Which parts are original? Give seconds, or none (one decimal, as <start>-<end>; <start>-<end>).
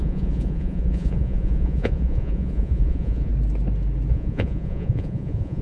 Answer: 3.3-4.1